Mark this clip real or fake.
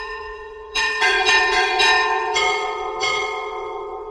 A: fake